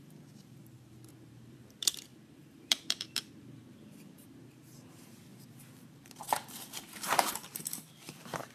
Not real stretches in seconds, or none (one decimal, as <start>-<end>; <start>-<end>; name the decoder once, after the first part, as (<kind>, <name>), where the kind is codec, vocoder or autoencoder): 0.0-8.5 (vocoder, BigVGAN v2)